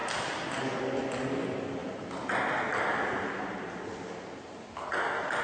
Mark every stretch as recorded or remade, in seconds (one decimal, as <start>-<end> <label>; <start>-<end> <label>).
0.0-5.4 recorded

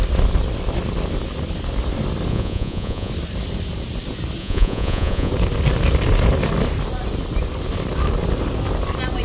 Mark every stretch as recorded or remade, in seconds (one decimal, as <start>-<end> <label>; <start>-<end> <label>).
0.0-2.3 recorded; 2.3-3.1 remade; 3.1-4.4 recorded; 4.4-5.3 remade; 5.3-9.2 recorded

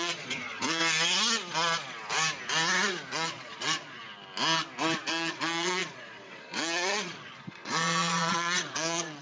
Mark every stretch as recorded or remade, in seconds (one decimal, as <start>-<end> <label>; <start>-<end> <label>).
0.0-0.8 remade; 0.8-3.1 recorded; 3.1-4.0 remade; 4.0-5.1 recorded; 5.1-9.2 remade

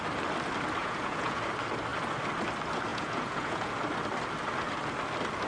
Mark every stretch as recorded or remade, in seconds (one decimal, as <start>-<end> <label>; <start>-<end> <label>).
0.0-0.8 recorded; 0.8-1.4 remade; 1.4-2.9 recorded; 2.9-3.7 remade; 3.7-5.5 recorded

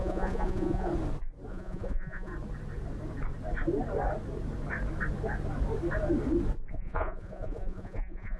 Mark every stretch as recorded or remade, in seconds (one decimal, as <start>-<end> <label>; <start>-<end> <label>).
0.0-0.9 remade; 0.9-1.5 recorded; 1.5-2.3 remade; 2.3-6.7 recorded; 6.7-8.4 remade